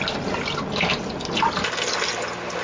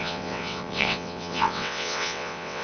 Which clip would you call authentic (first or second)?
first